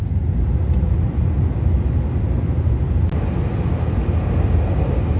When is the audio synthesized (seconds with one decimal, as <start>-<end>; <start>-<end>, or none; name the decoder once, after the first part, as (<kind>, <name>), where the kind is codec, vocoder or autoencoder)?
none

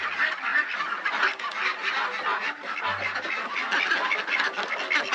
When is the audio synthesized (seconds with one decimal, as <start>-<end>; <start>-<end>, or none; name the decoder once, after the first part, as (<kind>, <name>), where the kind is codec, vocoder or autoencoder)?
none